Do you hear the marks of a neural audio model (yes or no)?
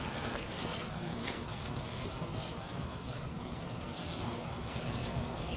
yes